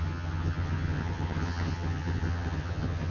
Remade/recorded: remade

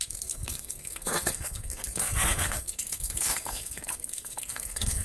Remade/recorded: remade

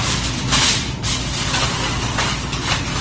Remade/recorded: recorded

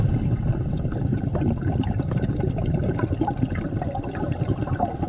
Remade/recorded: recorded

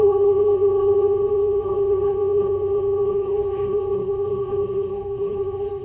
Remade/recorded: remade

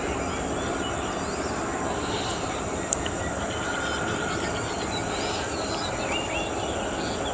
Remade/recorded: recorded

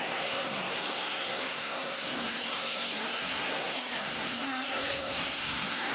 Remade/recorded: remade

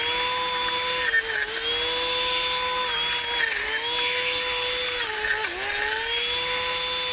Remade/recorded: recorded